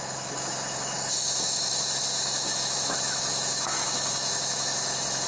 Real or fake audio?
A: fake